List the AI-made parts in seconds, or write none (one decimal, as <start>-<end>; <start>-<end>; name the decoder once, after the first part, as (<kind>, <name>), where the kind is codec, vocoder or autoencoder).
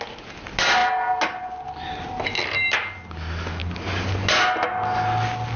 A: none